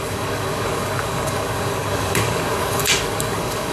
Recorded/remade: remade